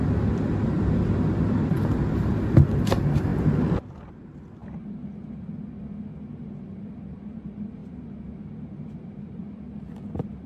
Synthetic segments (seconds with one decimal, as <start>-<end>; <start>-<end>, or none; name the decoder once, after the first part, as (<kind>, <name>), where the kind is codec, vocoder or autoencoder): 0.0-3.3 (vocoder, BigVGAN v2); 4.1-4.6; 6.2-10.5